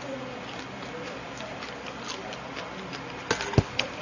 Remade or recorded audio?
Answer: recorded